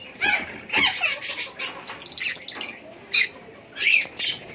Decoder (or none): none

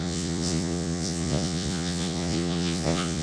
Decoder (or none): vocoder, Vocos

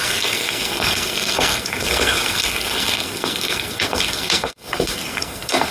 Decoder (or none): codec, SNAC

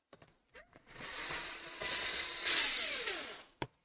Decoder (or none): vocoder, Vocos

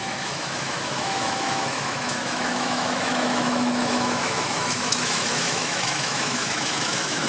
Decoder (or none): autoencoder, DAC-VAE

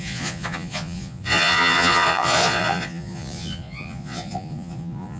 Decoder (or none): vocoder, Vocos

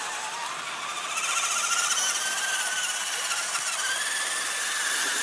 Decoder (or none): none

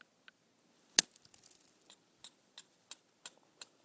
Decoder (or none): none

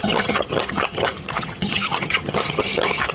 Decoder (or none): vocoder, HiFi-GAN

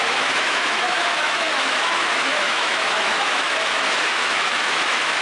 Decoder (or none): autoencoder, DAC-VAE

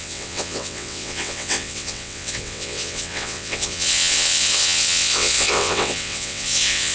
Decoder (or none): vocoder, WaveNeXt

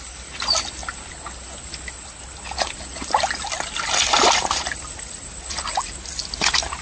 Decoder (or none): none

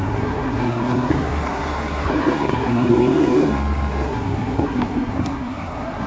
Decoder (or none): codec, SNAC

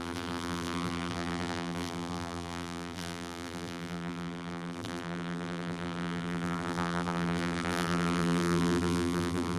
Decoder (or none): vocoder, BigVGAN v2